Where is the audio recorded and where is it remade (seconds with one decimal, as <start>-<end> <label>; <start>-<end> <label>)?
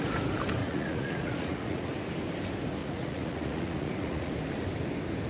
0.0-0.6 recorded; 0.6-1.9 remade; 1.9-2.8 recorded; 2.8-4.3 remade; 4.3-5.3 recorded